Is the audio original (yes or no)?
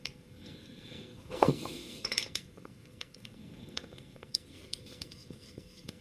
no